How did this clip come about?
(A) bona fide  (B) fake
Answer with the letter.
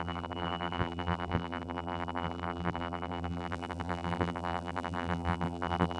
B